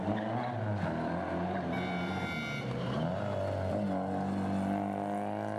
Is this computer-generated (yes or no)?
no